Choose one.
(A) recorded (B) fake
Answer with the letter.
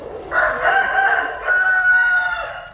B